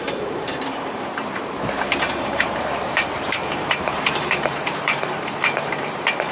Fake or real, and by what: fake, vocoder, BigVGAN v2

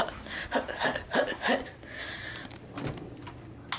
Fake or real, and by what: real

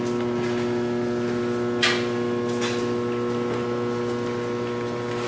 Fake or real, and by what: real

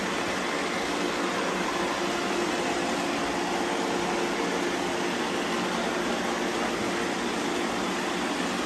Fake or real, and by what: real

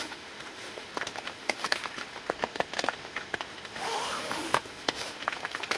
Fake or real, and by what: fake, autoencoder, DAC-VAE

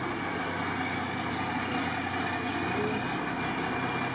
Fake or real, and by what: real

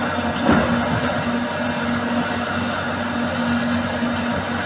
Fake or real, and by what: real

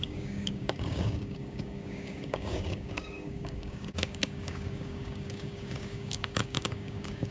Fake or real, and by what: fake, codec, DAC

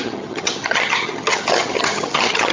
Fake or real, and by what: fake, vocoder, HiFi-GAN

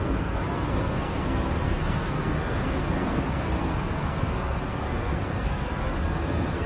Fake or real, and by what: fake, codec, SNAC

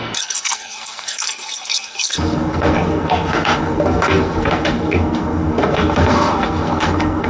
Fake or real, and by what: fake, codec, SNAC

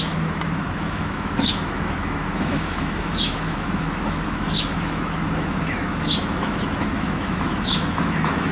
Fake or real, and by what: fake, autoencoder, DAC-VAE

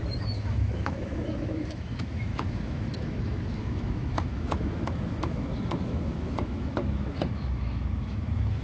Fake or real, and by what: fake, autoencoder, DAC-VAE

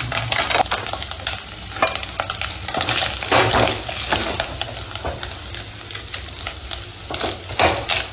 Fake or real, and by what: real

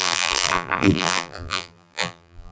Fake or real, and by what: fake, vocoder, BigVGAN v2